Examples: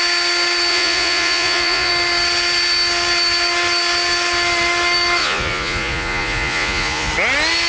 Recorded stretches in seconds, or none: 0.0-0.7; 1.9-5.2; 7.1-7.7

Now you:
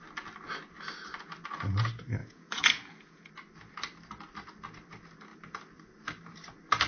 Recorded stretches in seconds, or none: 0.0-2.2; 3.3-6.9

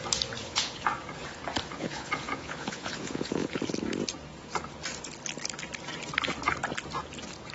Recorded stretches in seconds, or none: 0.0-0.4; 0.9-1.7; 3.6-7.5

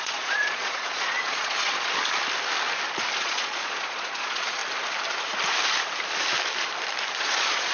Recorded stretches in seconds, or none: 2.0-3.2; 4.6-7.2

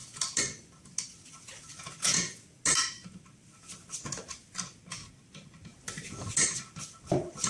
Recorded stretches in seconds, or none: 0.0-2.0; 2.6-7.5

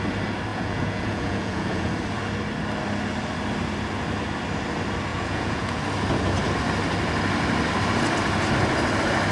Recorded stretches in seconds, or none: 0.0-0.5; 1.9-5.1; 5.8-9.3

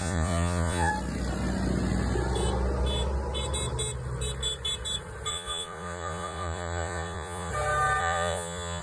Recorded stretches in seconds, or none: 0.9-5.3; 7.5-8.0

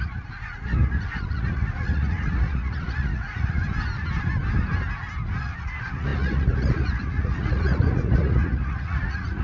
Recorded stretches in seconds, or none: 3.6-5.4